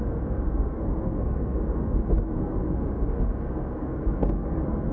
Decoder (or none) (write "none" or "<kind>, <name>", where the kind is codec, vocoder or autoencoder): codec, SNAC